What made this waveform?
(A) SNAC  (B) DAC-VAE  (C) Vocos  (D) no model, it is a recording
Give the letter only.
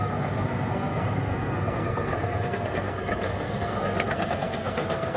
A